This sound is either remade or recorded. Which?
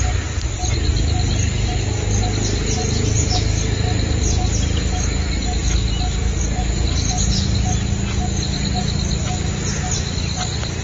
recorded